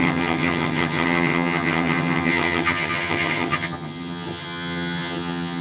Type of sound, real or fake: fake